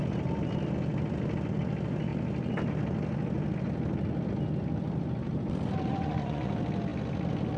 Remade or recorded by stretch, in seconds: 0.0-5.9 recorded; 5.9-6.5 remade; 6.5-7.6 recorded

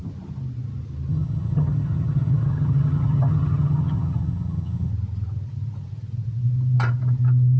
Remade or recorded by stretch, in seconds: 0.0-1.1 recorded; 1.1-4.9 remade; 4.9-7.6 recorded

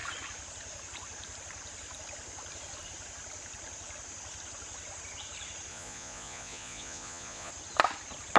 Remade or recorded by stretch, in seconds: 0.0-5.7 recorded; 5.7-7.5 remade; 7.5-8.4 recorded

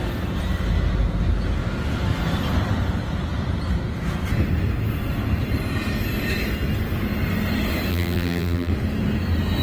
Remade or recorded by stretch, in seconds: 0.0-7.9 recorded; 7.9-8.7 remade; 8.7-9.6 recorded